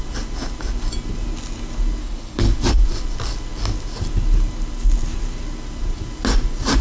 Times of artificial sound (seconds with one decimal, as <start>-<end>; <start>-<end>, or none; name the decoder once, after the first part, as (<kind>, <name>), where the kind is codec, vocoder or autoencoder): 2.0-2.5 (codec, HILCodec)